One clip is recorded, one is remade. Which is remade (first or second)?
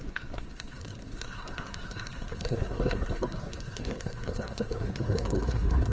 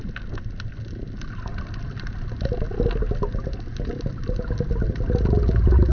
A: first